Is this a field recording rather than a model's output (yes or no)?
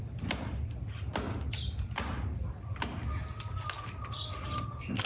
yes